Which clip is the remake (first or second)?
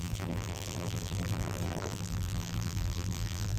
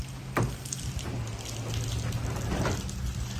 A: first